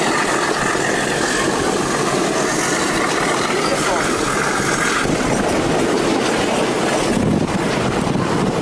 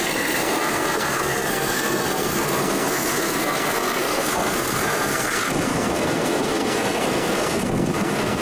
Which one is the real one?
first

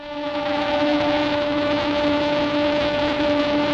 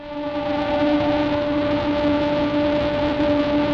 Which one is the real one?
second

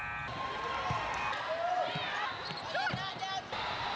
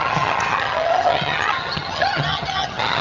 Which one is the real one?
first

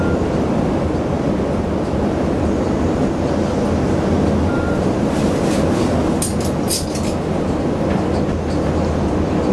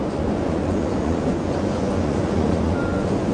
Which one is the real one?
first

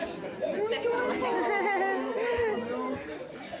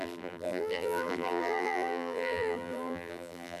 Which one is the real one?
first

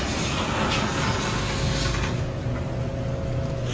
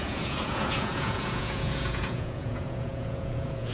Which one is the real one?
first